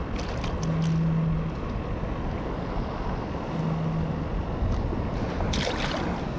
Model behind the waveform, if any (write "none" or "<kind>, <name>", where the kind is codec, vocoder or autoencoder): none